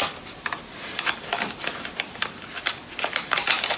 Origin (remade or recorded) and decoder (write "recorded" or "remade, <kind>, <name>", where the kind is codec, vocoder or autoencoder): recorded